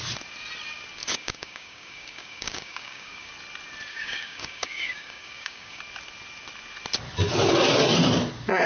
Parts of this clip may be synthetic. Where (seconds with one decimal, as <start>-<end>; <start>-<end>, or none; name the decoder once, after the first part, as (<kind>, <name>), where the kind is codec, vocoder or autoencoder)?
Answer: 1.0-3.3 (codec, DAC); 3.9-5.8